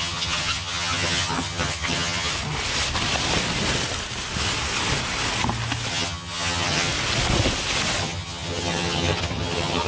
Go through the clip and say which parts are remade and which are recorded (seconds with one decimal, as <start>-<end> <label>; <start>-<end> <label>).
0.0-2.3 remade; 2.3-5.9 recorded; 5.9-6.9 remade; 6.9-8.0 recorded; 8.0-9.9 remade